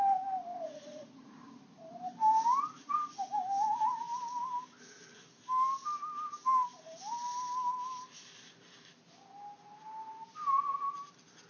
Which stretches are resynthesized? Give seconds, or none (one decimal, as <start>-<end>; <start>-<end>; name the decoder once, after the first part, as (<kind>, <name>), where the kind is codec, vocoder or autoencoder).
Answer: 0.5-2.0 (vocoder, Vocos)